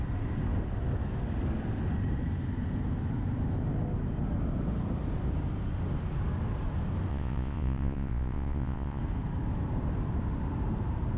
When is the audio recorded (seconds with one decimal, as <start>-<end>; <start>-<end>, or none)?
0.0-7.1; 9.0-11.2